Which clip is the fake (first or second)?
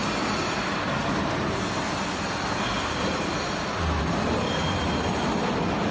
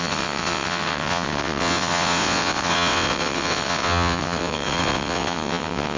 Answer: second